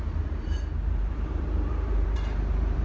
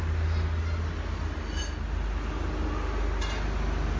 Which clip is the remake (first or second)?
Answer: first